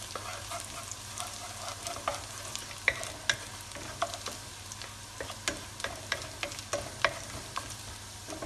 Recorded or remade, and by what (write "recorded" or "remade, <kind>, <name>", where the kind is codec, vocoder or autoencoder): recorded